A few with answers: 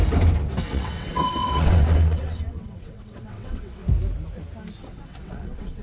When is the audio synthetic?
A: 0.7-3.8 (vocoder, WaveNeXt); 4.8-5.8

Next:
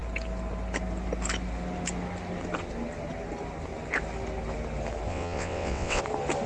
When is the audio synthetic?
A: 5.1-6.0 (vocoder, WaveNeXt)

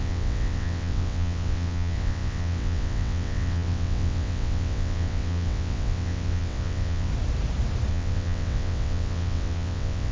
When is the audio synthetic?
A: 0.0-7.1 (vocoder, WaveNeXt); 7.9-10.1

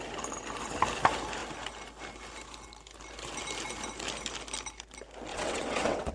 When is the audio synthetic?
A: 5.3-6.1 (vocoder, WaveNeXt)

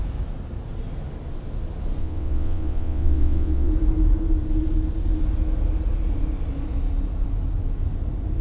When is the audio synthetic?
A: 2.0-3.7 (vocoder, WaveNeXt)